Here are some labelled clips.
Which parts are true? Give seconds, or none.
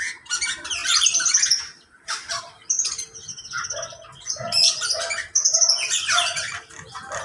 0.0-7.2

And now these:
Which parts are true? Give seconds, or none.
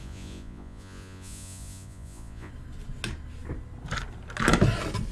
2.5-5.1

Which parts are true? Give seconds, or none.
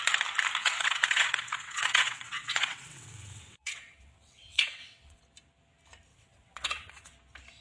0.0-0.6; 5.2-6.1; 7.1-7.6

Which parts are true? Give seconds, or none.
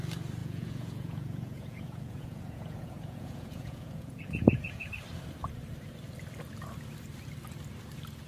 0.0-0.4; 4.9-8.3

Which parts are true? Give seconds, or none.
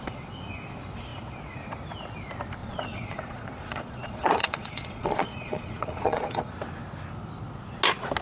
0.0-2.6; 6.5-8.2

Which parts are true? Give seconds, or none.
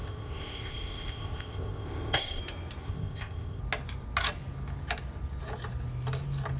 2.4-2.8; 3.6-6.6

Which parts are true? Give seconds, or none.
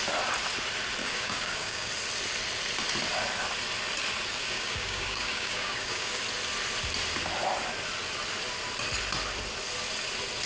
0.0-1.0; 1.9-4.4; 6.2-10.5